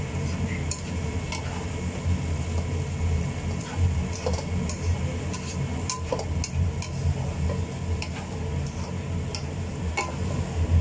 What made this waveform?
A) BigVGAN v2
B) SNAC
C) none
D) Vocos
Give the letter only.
C